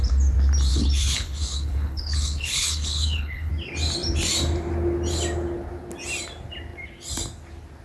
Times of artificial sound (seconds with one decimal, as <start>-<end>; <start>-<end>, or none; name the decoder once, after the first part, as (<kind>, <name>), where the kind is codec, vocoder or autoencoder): 0.7-3.5 (codec, HILCodec)